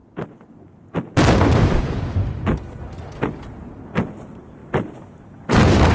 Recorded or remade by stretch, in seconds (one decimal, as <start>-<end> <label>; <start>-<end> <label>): 0.0-5.9 recorded